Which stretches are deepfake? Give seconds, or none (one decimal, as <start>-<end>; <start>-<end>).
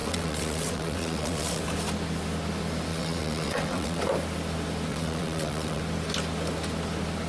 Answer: 0.0-1.6; 2.9-4.0; 4.9-5.8